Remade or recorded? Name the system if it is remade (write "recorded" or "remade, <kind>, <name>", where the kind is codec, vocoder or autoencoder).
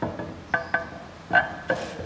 recorded